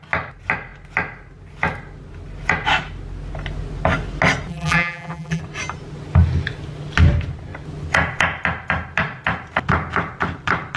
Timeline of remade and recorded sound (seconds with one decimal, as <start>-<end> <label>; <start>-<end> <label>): 0.0-4.5 recorded; 4.5-5.4 remade; 5.4-10.8 recorded

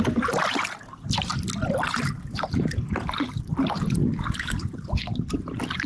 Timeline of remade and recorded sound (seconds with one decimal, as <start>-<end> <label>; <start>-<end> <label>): 0.0-5.9 recorded